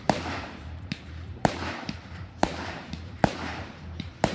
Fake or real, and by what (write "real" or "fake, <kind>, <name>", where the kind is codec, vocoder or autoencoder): fake, vocoder, BigVGAN v2